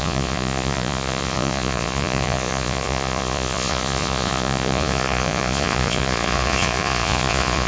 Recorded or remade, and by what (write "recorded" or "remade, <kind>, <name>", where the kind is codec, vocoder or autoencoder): remade, vocoder, Vocos